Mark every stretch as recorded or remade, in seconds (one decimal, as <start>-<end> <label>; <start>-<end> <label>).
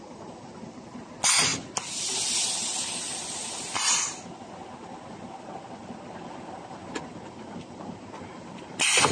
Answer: 0.0-9.1 recorded